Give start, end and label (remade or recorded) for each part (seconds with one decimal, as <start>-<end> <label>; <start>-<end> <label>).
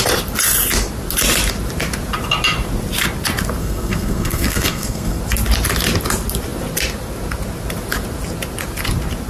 0.0-3.6 recorded; 3.6-5.2 remade; 5.2-9.3 recorded